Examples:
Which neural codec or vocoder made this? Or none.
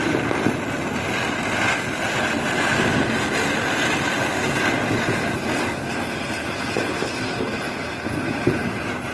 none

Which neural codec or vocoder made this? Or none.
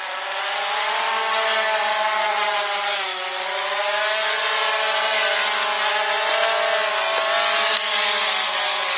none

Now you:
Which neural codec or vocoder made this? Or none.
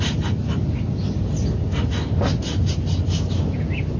none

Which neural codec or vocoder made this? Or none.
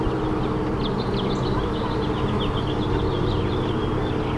none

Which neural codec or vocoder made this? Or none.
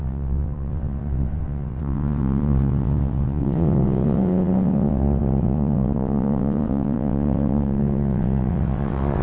vocoder, WaveNeXt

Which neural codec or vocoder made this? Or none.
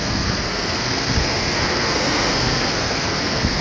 codec, SNAC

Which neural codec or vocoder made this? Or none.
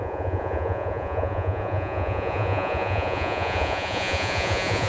vocoder, Vocos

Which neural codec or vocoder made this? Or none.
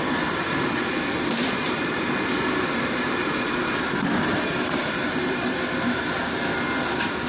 vocoder, BigVGAN v2